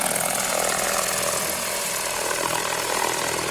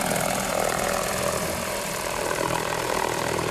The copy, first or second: second